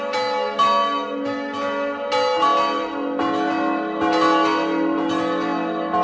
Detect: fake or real real